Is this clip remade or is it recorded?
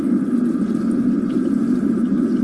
recorded